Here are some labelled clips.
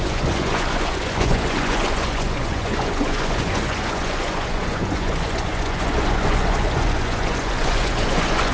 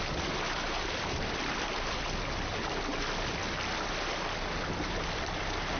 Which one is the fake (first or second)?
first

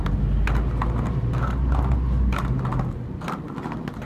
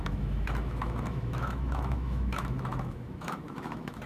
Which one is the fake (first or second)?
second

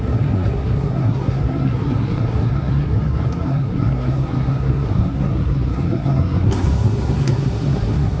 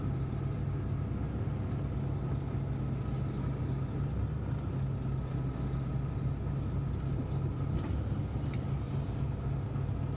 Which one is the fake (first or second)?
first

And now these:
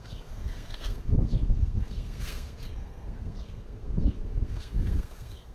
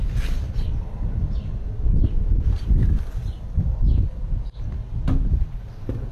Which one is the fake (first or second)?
first